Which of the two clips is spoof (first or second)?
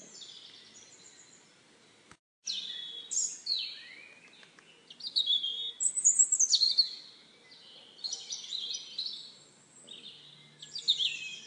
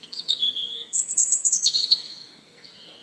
second